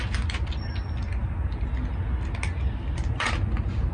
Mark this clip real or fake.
real